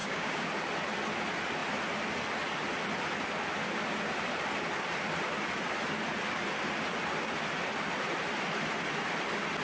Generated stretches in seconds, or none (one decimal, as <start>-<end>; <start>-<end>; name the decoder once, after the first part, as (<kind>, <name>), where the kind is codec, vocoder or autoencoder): 0.0-0.5 (codec, DAC)